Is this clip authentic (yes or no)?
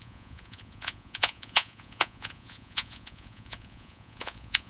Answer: no